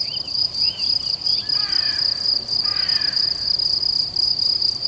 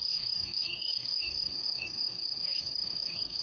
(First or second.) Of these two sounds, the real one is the first